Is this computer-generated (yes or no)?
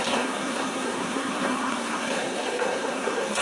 yes